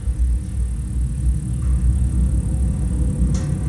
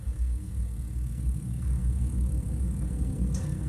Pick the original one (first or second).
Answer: first